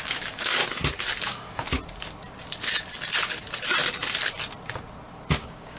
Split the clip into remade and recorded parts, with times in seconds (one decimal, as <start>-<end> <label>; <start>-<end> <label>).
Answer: 0.0-0.6 remade; 0.6-1.2 recorded; 1.2-1.8 remade; 1.8-5.3 recorded; 5.3-5.8 remade

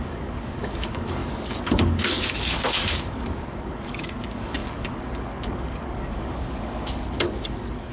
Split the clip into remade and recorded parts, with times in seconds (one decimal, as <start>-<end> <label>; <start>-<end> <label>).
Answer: 0.0-7.9 remade

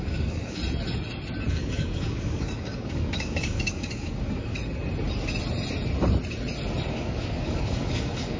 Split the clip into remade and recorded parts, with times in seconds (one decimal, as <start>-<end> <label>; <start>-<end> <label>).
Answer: 0.0-0.6 remade; 0.6-1.5 recorded; 1.5-4.6 remade; 4.6-6.9 recorded; 6.9-8.4 remade

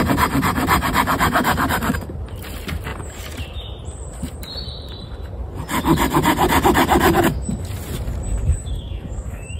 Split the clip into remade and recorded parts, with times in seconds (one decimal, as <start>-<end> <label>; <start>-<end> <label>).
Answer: 0.0-8.6 recorded; 8.6-9.6 remade

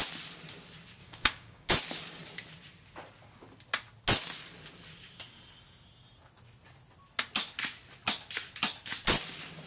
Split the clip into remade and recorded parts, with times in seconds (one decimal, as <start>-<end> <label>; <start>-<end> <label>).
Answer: 0.0-1.0 recorded; 1.0-1.7 remade; 1.7-9.7 recorded

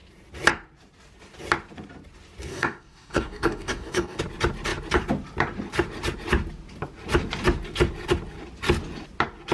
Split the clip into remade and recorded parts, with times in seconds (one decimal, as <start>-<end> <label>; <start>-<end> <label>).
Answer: 0.0-2.5 recorded; 2.5-4.2 remade; 4.2-9.5 recorded

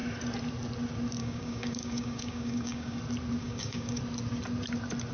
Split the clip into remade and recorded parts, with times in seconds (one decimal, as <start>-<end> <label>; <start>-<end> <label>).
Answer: 0.0-1.2 recorded; 1.2-3.0 remade; 3.0-3.4 recorded; 3.4-4.0 remade; 4.0-5.1 recorded

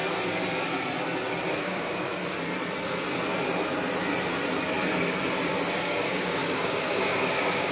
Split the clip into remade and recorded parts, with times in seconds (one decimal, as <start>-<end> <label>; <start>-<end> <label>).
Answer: 0.0-1.6 recorded; 1.6-2.1 remade; 2.1-5.8 recorded; 5.8-7.7 remade